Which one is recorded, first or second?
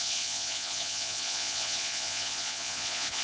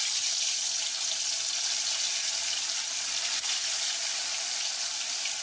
second